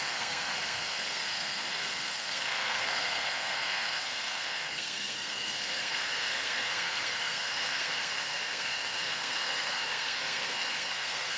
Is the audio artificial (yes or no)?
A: yes